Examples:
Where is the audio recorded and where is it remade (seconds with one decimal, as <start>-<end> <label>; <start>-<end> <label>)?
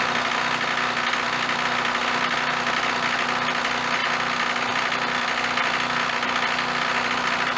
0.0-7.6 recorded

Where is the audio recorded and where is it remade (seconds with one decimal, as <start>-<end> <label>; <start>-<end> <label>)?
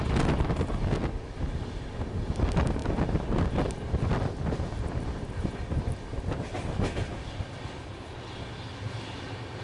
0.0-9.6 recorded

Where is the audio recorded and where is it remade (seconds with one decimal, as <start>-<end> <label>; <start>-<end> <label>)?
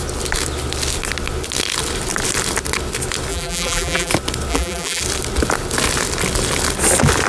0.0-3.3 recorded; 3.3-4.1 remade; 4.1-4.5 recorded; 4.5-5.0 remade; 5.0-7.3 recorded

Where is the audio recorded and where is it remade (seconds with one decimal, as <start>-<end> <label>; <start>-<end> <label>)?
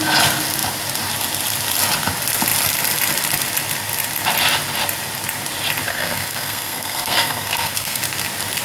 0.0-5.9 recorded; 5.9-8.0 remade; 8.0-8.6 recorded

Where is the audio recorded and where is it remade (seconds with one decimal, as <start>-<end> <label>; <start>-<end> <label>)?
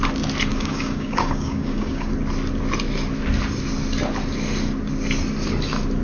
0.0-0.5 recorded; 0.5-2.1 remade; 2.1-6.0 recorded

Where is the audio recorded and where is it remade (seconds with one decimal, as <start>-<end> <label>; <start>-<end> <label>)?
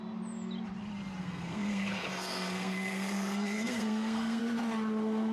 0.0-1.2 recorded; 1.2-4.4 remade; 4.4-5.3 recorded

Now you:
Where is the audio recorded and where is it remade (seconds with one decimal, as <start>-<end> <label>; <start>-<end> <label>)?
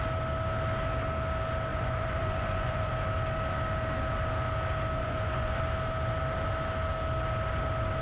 0.0-1.7 recorded; 1.7-2.9 remade; 2.9-5.0 recorded; 5.0-5.6 remade; 5.6-8.0 recorded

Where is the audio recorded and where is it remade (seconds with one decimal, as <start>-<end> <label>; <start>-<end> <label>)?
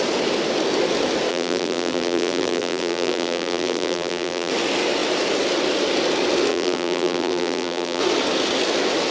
0.0-1.3 recorded; 1.3-4.5 remade; 4.5-6.5 recorded; 6.5-8.0 remade; 8.0-9.1 recorded